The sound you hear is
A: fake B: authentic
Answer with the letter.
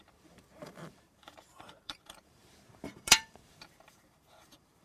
A